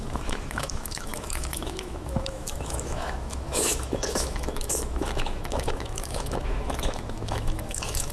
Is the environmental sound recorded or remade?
remade